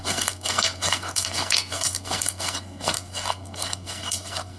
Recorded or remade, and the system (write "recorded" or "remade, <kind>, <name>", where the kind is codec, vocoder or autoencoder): remade, codec, SNAC